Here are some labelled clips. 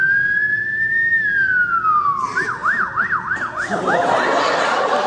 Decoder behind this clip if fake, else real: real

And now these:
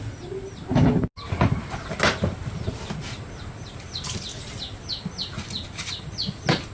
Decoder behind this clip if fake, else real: real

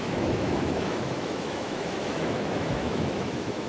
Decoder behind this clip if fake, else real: fake, autoencoder, DAC-VAE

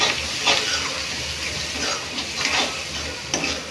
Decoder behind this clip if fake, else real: real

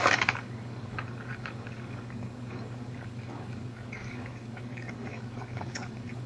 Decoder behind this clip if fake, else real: fake, codec, DAC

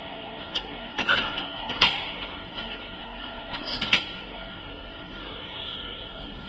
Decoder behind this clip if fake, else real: fake, codec, SNAC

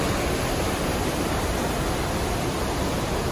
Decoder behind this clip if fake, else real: real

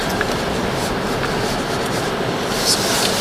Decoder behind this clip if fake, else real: real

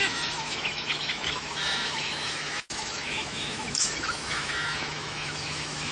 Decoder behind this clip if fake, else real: fake, autoencoder, DAC-VAE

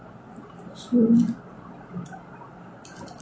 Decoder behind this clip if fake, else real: real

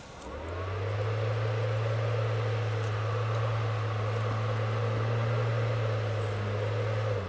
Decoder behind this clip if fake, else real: real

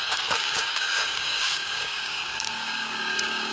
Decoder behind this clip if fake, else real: fake, codec, DAC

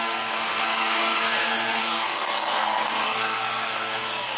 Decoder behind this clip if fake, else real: fake, codec, SNAC